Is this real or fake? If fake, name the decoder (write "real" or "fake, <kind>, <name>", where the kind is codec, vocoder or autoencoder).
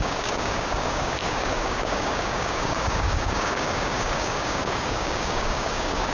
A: fake, codec, DAC